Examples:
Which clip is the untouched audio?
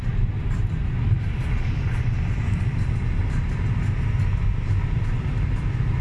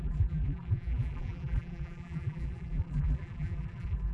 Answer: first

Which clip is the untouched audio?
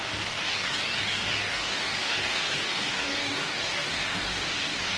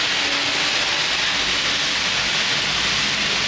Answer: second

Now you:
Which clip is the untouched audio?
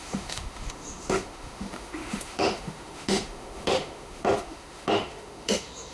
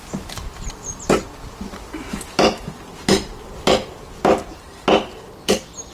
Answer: second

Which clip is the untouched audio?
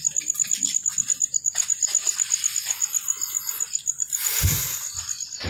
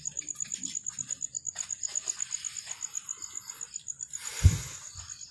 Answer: second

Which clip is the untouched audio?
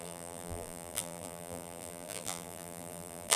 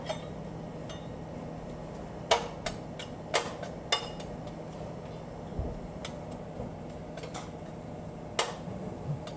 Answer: second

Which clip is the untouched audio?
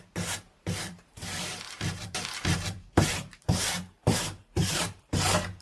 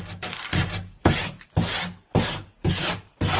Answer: second